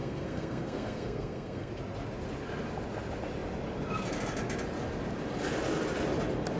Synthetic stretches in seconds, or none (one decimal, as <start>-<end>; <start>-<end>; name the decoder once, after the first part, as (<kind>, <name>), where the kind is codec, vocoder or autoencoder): 0.0-1.7 (codec, SNAC)